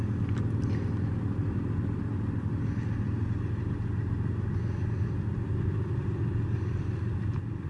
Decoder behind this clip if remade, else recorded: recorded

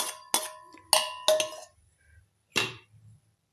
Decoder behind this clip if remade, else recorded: recorded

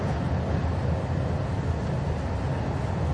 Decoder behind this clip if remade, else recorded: recorded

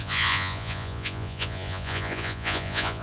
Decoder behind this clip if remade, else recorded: remade, vocoder, Vocos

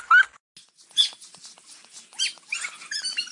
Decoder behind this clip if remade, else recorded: recorded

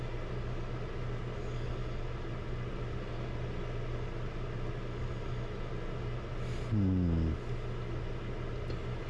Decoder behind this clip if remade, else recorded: recorded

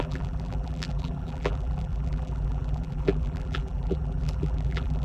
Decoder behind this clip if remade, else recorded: remade, vocoder, BigVGAN v2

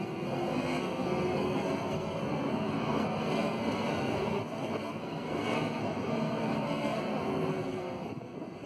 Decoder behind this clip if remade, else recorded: remade, codec, SNAC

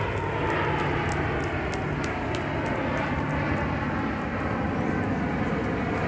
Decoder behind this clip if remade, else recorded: recorded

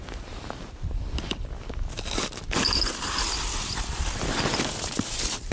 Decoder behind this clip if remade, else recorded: recorded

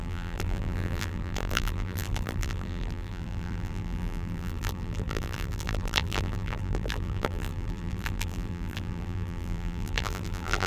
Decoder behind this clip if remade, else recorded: remade, vocoder, BigVGAN v2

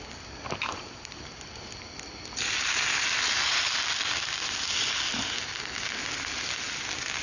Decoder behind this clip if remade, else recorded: recorded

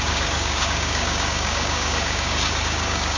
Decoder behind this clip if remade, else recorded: remade, codec, DAC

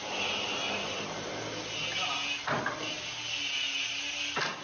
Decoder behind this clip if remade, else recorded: recorded